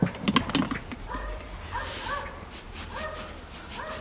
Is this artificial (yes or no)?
no